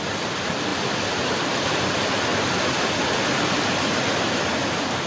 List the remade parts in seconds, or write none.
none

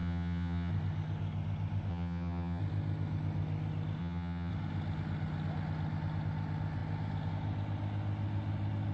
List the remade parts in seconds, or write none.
0.0-0.7 (vocoder, HiFi-GAN); 1.9-2.6; 4.0-4.5

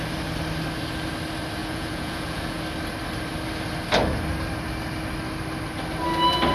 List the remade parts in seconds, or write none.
1.6-2.6 (vocoder, Vocos)

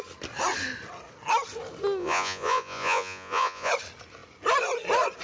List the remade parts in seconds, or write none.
2.0-3.7 (vocoder, Vocos)

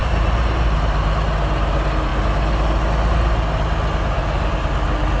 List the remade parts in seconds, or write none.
0.0-1.1 (vocoder, BigVGAN v2)

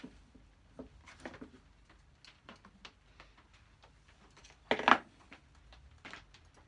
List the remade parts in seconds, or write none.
none